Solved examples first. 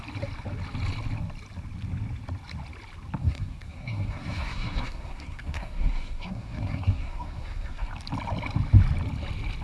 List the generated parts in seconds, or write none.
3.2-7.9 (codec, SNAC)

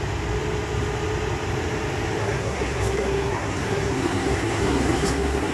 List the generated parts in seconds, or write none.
2.2-5.5 (codec, SNAC)